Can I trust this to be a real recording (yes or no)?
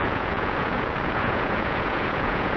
no